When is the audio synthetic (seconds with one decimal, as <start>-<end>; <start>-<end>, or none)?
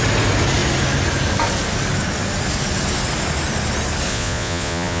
4.1-5.0